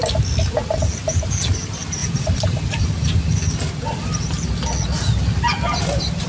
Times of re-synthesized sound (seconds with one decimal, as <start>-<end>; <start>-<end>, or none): 2.0-2.8